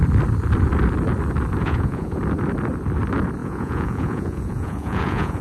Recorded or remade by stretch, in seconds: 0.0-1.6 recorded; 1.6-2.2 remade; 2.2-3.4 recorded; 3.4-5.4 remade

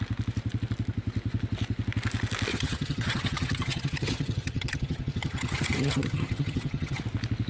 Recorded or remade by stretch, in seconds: 0.0-2.5 recorded; 2.5-7.0 remade; 7.0-7.5 recorded

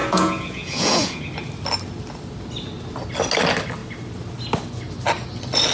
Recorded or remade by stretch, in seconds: 0.0-1.2 remade; 1.2-5.7 recorded

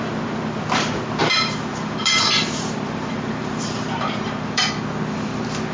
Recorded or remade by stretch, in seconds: 0.0-1.2 recorded; 1.2-4.6 remade; 4.6-5.7 recorded

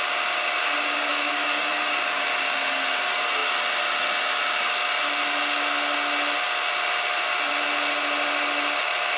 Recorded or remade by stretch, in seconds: 0.0-1.1 recorded; 1.1-1.7 remade; 1.7-9.2 recorded

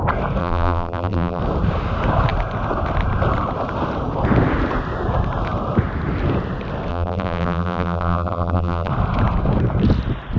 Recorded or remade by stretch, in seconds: 0.0-0.4 recorded; 0.4-1.4 remade; 1.4-6.9 recorded; 6.9-8.9 remade; 8.9-10.4 recorded